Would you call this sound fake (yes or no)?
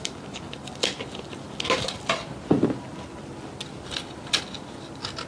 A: no